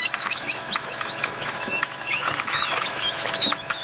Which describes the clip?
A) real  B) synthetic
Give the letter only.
B